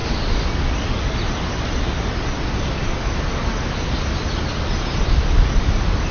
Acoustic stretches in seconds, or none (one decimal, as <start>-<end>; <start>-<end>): 0.0-6.1